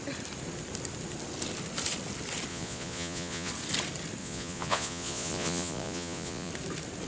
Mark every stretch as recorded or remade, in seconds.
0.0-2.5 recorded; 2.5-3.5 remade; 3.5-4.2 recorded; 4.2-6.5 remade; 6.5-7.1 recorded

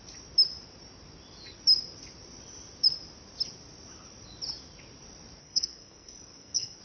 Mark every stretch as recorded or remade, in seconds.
0.0-5.4 recorded; 5.4-6.8 remade

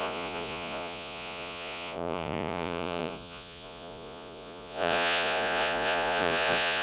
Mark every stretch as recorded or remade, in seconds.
0.0-6.8 remade

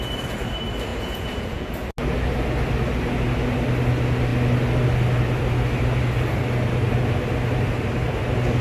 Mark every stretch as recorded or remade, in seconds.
0.0-0.9 recorded; 0.9-1.7 remade; 1.7-8.6 recorded

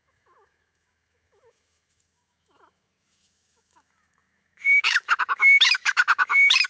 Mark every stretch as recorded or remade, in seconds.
0.0-6.7 remade

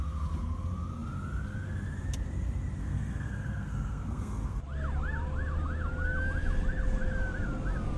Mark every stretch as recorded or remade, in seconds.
0.0-2.8 recorded; 2.8-4.6 remade; 4.6-8.0 recorded